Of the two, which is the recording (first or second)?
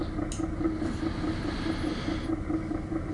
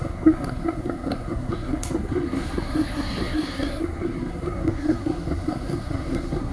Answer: first